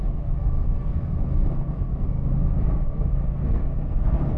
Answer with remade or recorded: remade